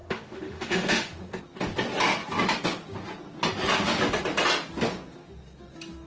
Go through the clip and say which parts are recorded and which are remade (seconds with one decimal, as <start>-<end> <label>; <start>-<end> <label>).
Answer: 0.0-1.4 remade; 1.4-6.1 recorded